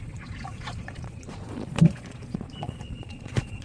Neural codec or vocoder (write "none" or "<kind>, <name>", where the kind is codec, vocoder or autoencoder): vocoder, Vocos